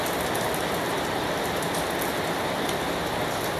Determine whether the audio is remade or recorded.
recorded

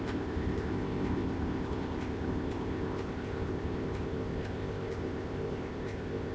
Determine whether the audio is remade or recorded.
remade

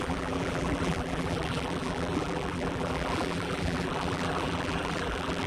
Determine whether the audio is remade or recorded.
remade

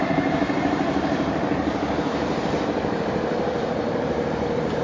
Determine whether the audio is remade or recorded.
remade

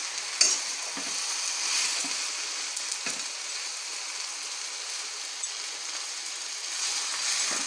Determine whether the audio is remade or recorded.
recorded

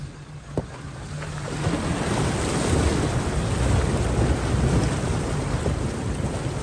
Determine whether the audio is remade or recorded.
recorded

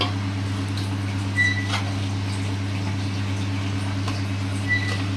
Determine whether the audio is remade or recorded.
recorded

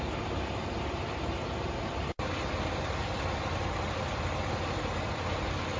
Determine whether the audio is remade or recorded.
recorded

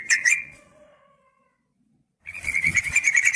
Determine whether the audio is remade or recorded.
remade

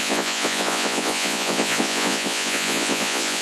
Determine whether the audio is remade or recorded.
remade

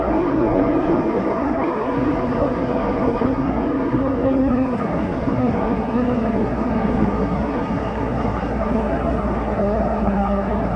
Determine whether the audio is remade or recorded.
remade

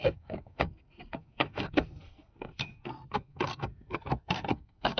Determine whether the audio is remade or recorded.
remade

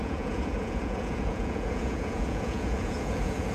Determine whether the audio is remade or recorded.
remade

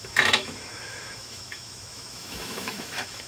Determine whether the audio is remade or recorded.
remade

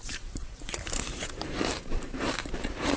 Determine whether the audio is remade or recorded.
remade